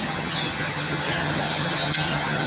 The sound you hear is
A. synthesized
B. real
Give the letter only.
A